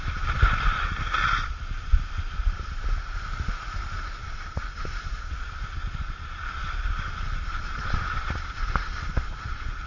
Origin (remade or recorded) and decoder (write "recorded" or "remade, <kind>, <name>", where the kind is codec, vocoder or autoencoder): recorded